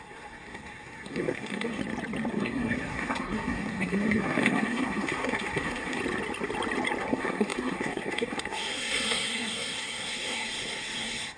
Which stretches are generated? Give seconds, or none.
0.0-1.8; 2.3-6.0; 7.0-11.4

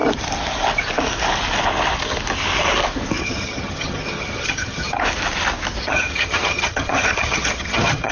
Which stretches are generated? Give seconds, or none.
3.2-5.0; 5.8-8.1

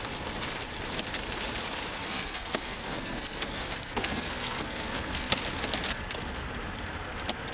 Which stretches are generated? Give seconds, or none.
2.0-5.4

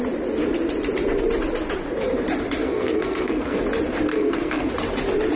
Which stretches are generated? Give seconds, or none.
2.6-3.6; 4.1-4.7

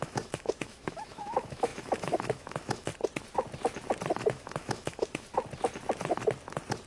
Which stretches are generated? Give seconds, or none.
0.0-2.9; 4.1-5.3

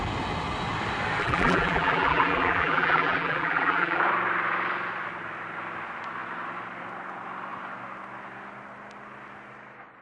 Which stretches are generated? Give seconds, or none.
1.2-4.0

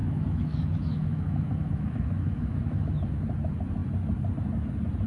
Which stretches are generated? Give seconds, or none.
0.0-3.1